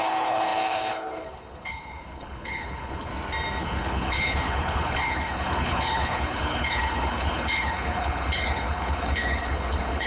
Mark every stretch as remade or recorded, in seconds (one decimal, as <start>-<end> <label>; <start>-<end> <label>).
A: 0.0-3.1 remade; 3.1-3.6 recorded; 3.6-10.1 remade